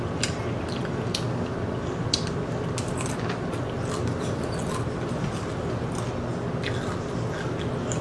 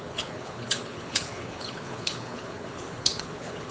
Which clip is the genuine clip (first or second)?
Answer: first